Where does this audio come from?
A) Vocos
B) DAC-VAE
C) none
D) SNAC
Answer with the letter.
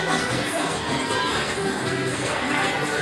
D